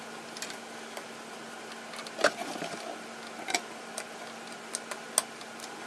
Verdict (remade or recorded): recorded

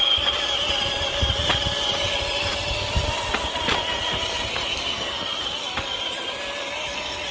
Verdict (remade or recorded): recorded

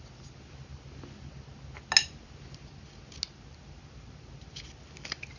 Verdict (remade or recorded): recorded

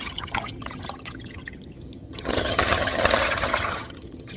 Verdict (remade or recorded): remade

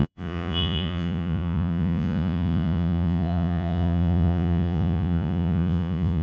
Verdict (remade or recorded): remade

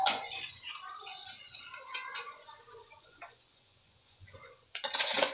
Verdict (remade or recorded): remade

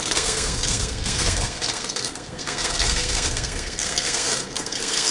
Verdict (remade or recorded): remade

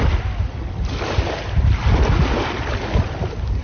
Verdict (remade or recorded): recorded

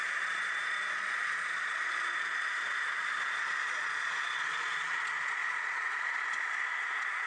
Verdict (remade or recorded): remade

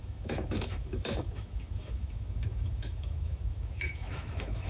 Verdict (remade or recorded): remade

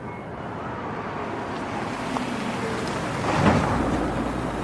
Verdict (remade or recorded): recorded